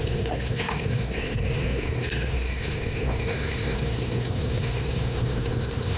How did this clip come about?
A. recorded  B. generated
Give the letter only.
B